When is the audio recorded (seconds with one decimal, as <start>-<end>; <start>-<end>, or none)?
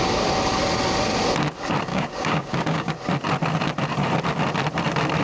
0.0-1.9; 2.9-5.2